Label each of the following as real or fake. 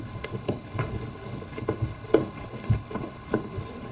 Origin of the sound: fake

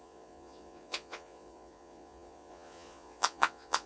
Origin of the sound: fake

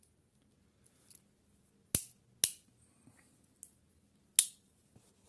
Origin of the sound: real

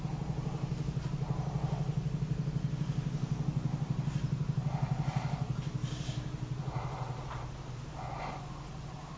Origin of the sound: real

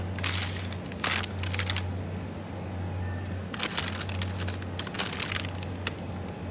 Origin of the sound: real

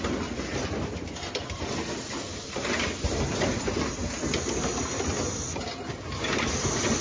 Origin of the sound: real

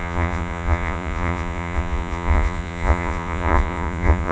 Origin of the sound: fake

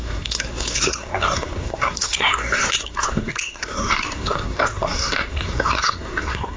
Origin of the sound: fake